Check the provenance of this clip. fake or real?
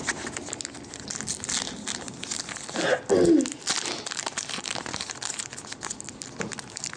real